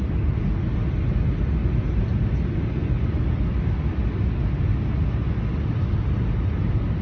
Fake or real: real